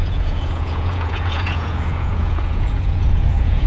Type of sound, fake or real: fake